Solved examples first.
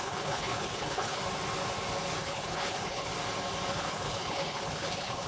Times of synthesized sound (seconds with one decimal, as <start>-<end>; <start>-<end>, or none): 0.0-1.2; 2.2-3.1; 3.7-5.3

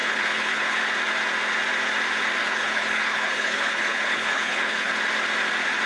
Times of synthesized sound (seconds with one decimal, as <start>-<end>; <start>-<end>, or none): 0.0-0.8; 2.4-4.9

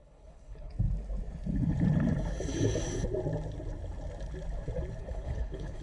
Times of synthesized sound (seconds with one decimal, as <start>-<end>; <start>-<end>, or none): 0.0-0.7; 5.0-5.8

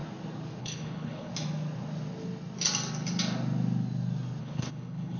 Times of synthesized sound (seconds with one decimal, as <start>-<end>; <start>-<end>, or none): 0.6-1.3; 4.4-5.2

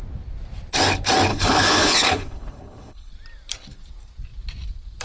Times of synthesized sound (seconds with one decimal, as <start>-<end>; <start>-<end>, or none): 1.3-3.1